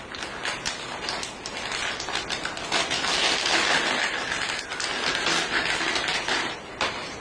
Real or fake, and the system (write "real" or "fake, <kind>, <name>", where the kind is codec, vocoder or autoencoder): real